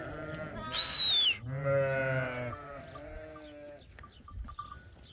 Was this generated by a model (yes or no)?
no